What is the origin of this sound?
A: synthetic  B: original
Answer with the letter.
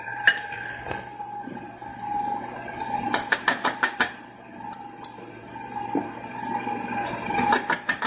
A